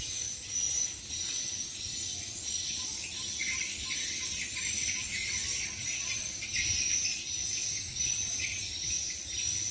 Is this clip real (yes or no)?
yes